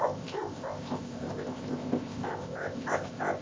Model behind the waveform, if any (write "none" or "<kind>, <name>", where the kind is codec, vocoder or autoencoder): codec, ZipCodec